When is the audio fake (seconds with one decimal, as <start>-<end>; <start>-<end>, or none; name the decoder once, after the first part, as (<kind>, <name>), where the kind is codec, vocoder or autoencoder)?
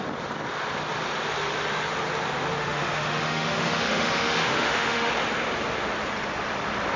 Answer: 2.6-5.1 (autoencoder, DAC-VAE)